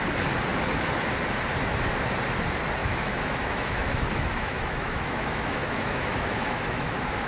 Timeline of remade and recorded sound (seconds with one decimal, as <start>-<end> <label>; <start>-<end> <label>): 0.0-2.8 recorded; 2.8-7.3 remade